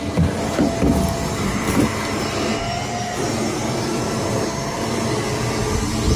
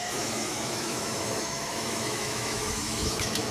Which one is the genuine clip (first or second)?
first